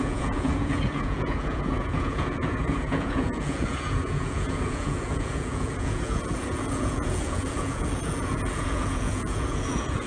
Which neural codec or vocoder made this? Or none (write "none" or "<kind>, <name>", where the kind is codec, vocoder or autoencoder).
vocoder, Vocos